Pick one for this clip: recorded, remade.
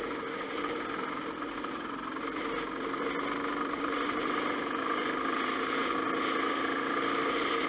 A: recorded